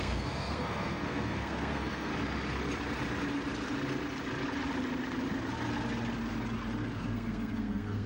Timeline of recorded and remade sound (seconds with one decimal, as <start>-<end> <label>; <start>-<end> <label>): 0.0-2.1 remade; 2.1-7.0 recorded; 7.0-8.1 remade